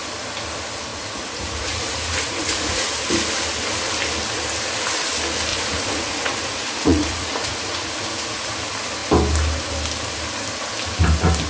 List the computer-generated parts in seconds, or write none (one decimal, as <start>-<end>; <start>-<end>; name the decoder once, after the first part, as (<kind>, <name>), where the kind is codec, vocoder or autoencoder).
0.9-2.9 (vocoder, Vocos); 5.5-8.5